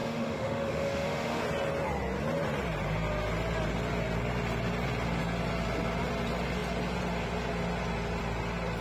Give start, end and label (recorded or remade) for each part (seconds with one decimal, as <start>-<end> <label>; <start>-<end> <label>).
0.0-1.4 remade; 1.4-8.8 recorded